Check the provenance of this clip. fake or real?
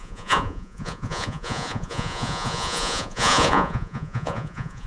fake